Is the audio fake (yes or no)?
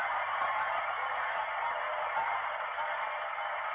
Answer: no